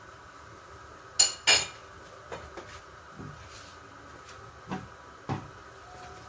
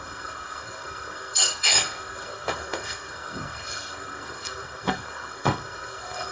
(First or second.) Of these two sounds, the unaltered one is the first